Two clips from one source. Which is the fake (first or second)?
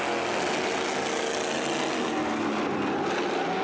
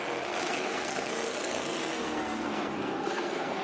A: second